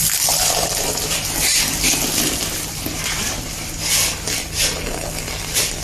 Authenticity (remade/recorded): recorded